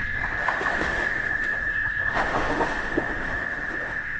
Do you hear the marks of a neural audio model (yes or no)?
yes